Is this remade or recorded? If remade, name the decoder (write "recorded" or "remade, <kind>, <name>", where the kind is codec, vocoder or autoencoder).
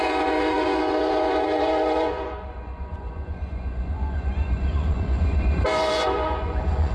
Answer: remade, vocoder, Vocos